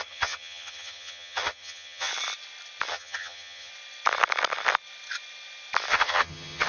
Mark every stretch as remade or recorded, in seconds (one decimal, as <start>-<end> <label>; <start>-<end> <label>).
0.0-2.1 remade; 2.1-2.9 recorded; 2.9-3.7 remade; 3.7-5.9 recorded; 5.9-6.7 remade